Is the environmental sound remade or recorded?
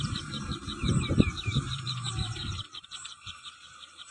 remade